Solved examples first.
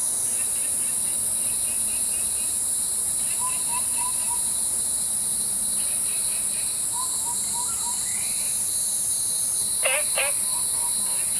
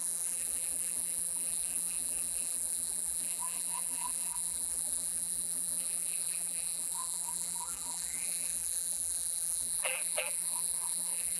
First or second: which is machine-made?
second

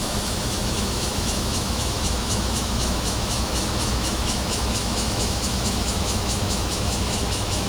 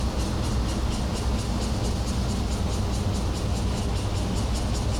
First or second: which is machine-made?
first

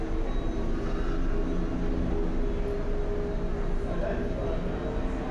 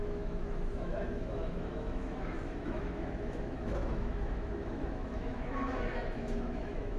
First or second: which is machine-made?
second